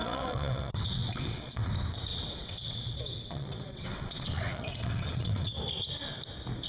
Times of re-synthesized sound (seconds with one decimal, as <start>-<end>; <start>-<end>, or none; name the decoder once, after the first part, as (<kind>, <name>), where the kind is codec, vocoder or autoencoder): 0.0-1.7 (vocoder, WaveNeXt); 2.1-5.6